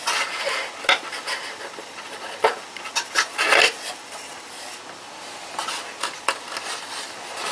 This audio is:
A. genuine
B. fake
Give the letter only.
A